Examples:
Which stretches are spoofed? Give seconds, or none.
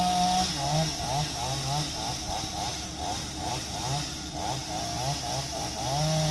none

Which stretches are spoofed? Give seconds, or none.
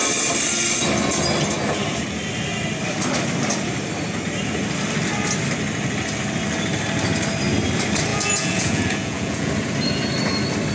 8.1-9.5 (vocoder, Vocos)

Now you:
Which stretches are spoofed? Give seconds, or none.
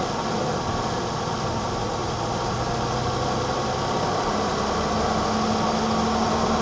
none